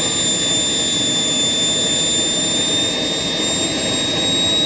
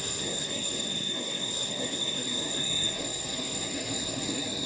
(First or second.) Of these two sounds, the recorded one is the first